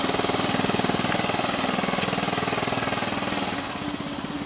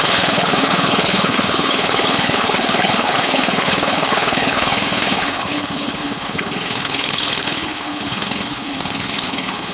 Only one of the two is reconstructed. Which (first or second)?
second